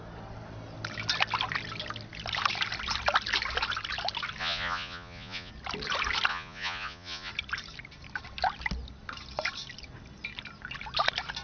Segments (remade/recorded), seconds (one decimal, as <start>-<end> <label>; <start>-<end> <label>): 0.0-4.4 recorded; 4.4-5.5 remade; 5.5-6.3 recorded; 6.3-7.3 remade; 7.3-11.4 recorded